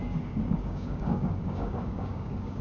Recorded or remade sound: remade